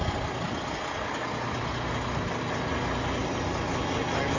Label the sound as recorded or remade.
recorded